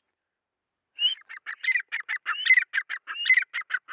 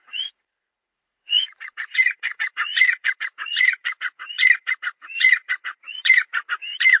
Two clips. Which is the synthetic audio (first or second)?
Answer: second